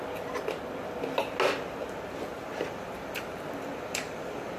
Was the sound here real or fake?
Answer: real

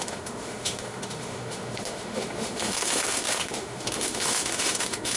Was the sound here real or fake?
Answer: fake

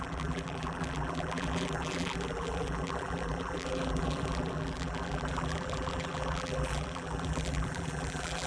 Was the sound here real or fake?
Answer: fake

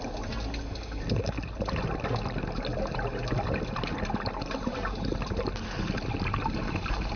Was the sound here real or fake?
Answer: real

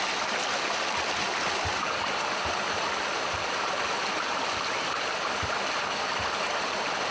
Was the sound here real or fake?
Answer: real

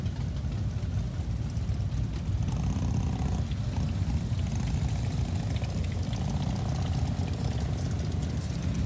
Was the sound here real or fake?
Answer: real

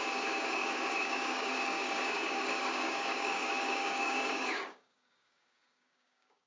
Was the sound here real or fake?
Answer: fake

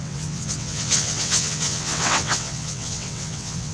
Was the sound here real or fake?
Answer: fake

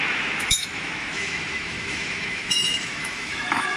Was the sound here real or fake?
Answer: fake